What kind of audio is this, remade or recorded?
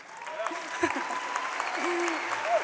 recorded